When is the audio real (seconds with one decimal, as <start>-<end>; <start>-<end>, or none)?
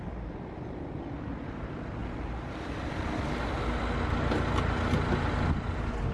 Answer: 0.0-6.1